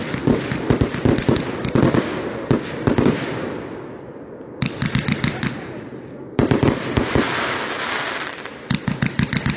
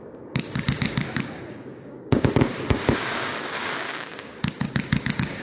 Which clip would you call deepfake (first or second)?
second